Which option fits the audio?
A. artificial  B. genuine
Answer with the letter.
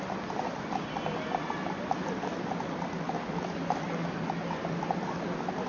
B